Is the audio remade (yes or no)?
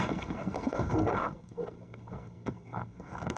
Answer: yes